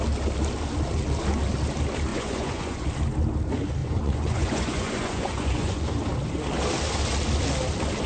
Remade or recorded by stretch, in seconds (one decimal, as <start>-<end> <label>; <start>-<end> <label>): 0.0-2.1 recorded; 2.1-2.9 remade; 2.9-3.8 recorded; 3.8-5.9 remade; 5.9-8.1 recorded